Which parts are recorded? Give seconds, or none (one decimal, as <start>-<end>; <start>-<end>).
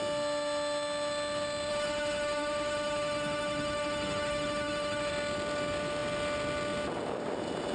0.0-1.7; 5.1-7.7